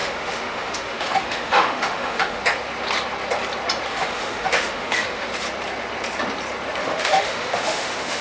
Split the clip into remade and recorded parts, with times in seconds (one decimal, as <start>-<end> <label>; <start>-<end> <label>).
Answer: 0.0-2.4 remade; 2.4-3.9 recorded; 3.9-5.3 remade; 5.3-6.8 recorded; 6.8-8.2 remade